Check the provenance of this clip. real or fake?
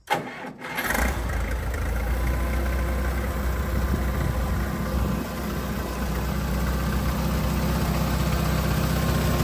real